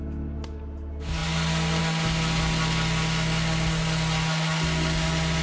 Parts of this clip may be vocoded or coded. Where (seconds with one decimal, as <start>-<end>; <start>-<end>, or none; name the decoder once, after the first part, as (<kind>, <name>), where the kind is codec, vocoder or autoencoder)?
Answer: none